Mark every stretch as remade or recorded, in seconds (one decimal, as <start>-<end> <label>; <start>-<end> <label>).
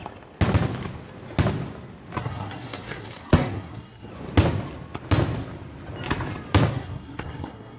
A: 0.0-2.2 recorded; 2.2-4.1 remade; 4.1-6.7 recorded; 6.7-7.8 remade